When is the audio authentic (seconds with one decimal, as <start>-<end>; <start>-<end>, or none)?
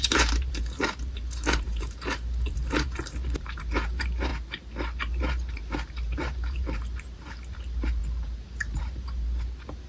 4.3-5.0